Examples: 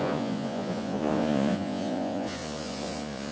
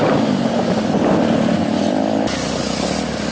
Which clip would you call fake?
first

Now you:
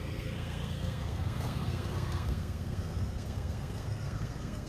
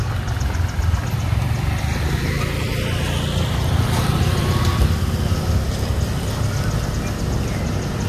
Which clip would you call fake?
first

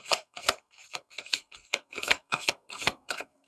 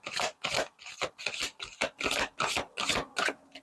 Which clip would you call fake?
first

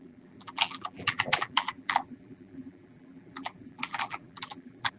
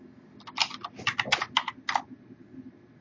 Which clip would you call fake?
first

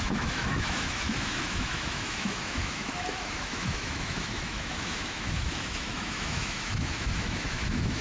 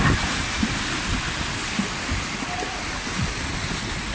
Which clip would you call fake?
first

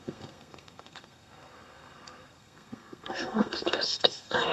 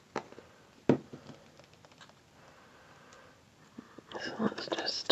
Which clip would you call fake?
first